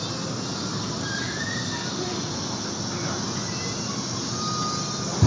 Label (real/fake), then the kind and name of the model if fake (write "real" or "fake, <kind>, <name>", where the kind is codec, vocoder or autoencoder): real